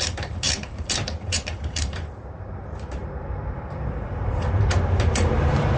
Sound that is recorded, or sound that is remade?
remade